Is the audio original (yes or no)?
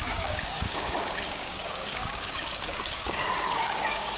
no